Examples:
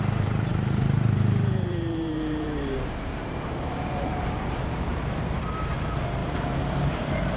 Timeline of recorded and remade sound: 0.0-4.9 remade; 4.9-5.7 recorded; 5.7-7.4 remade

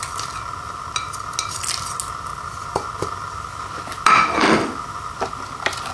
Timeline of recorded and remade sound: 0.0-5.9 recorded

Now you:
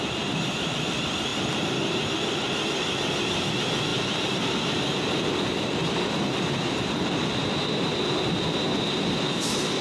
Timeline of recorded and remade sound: 0.0-3.9 recorded; 3.9-7.3 remade; 7.3-9.8 recorded